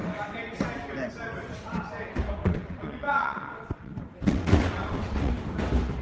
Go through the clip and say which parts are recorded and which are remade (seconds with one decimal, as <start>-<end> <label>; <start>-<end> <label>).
0.0-2.4 recorded; 2.4-5.3 remade; 5.3-6.0 recorded